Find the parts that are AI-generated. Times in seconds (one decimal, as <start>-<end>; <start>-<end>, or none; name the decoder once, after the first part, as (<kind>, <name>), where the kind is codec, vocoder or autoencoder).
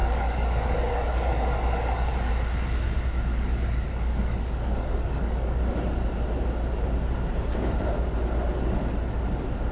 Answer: 0.0-2.3 (codec, DAC); 3.3-5.6